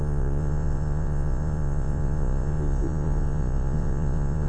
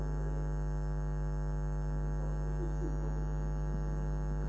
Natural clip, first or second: second